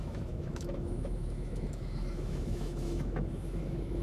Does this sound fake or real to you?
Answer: fake